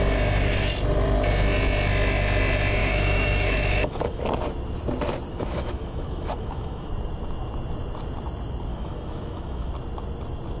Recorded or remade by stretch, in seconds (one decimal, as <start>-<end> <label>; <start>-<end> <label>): 0.0-2.8 recorded; 2.8-4.2 remade; 4.2-5.3 recorded; 5.3-6.9 remade; 6.9-8.7 recorded; 8.7-9.7 remade; 9.7-10.6 recorded